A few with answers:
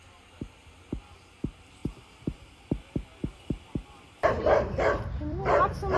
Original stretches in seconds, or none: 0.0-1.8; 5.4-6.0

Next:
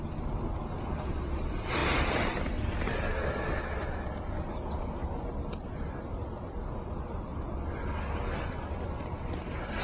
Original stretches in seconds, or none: 0.0-9.8

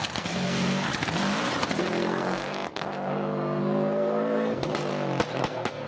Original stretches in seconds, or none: 0.9-1.8; 4.9-5.4

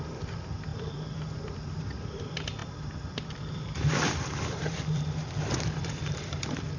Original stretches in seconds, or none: 0.0-0.7; 1.8-2.6

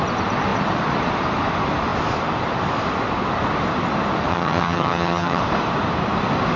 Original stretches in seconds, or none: 0.0-4.3; 5.4-6.6

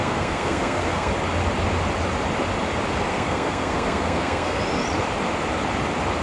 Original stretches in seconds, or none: 1.1-3.1; 4.6-6.2

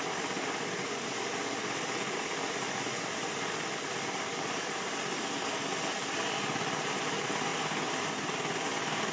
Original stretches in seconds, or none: 0.0-9.1